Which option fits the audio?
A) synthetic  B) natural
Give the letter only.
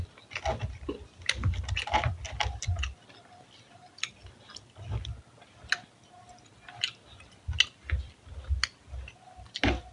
B